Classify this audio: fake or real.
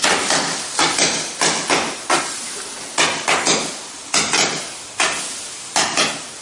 real